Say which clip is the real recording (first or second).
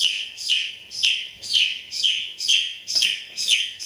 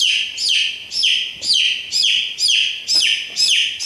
second